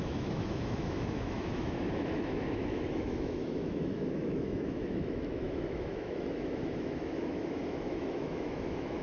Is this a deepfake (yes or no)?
yes